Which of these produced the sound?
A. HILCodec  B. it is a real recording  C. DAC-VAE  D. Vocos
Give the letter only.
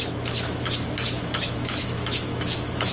C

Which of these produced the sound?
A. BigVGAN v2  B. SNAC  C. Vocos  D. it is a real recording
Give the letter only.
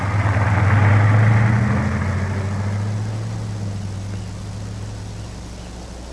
D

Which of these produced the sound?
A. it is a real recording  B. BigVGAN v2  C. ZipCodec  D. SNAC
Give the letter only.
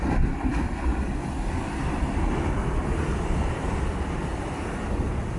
B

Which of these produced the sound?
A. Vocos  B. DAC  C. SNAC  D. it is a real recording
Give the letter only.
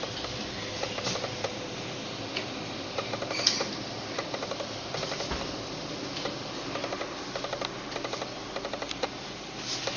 D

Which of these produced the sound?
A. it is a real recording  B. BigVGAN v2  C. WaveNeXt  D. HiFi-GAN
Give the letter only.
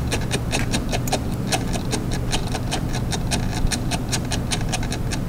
B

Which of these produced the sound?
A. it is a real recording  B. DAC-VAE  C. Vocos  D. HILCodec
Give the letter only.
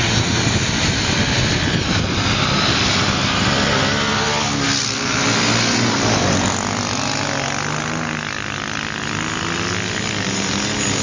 A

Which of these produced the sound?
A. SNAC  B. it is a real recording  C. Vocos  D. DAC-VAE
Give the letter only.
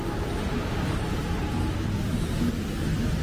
B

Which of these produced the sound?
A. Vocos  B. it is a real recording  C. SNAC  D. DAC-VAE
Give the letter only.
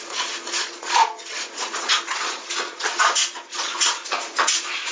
A